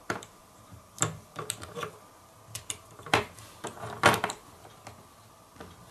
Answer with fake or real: real